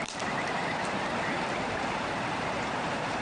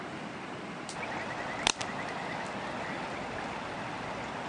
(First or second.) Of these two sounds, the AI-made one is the first